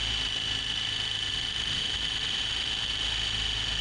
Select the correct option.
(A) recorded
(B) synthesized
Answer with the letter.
A